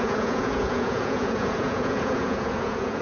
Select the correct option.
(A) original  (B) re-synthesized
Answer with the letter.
B